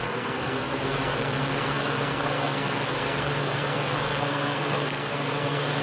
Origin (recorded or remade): remade